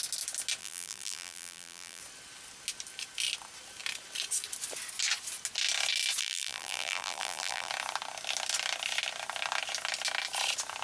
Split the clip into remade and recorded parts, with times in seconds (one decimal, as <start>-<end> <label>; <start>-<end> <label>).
0.0-0.6 recorded; 0.6-2.0 remade; 2.0-6.2 recorded; 6.2-7.7 remade; 7.7-10.8 recorded